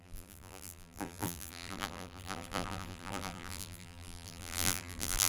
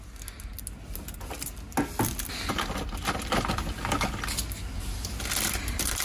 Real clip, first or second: second